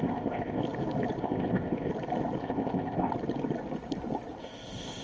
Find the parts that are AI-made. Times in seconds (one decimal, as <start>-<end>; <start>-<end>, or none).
0.0-0.6; 1.2-1.9; 2.4-3.1; 4.4-5.0